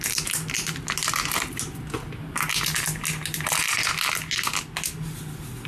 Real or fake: real